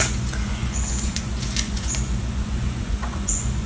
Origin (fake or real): fake